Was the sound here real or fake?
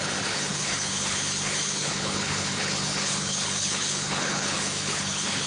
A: fake